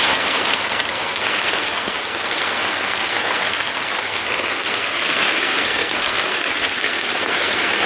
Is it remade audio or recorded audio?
remade